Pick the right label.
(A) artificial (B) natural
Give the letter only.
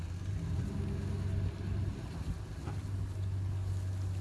B